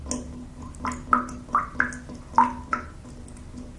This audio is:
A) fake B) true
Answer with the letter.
B